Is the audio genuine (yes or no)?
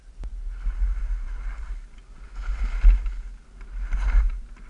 yes